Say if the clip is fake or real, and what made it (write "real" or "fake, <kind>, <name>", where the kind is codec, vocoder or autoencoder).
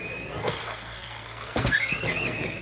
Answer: fake, codec, SNAC